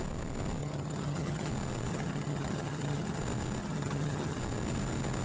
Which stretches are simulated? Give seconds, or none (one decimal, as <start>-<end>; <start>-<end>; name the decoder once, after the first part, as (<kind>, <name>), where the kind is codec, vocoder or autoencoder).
0.6-1.5 (vocoder, HiFi-GAN); 1.9-3.2; 3.6-4.4

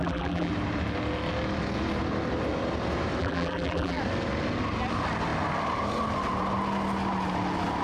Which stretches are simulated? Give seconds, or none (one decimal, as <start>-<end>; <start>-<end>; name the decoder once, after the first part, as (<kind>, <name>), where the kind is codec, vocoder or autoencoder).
0.0-0.5 (vocoder, BigVGAN v2); 3.2-4.0